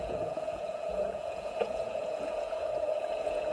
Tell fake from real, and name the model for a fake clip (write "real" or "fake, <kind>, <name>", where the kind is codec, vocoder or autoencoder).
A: fake, vocoder, Vocos